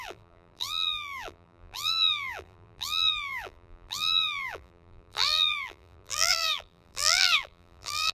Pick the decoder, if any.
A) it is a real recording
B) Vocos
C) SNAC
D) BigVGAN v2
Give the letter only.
D